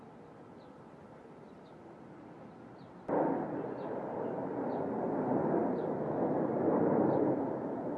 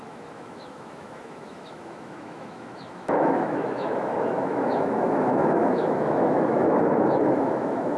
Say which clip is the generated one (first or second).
second